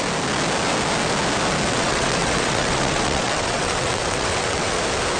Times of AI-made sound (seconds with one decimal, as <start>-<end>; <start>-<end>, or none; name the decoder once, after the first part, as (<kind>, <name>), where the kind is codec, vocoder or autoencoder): 1.7-4.8 (vocoder, WaveNeXt)